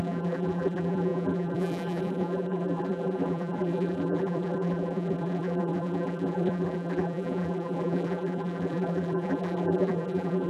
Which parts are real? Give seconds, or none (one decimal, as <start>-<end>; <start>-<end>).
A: none